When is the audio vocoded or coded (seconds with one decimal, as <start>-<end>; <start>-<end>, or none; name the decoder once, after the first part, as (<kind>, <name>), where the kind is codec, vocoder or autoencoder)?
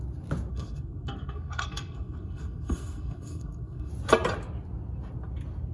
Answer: 0.5-3.9 (codec, SNAC)